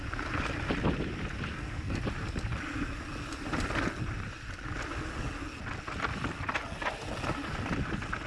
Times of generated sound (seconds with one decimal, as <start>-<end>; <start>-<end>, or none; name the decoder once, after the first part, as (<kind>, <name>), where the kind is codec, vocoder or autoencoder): 1.5-2.0 (codec, SNAC)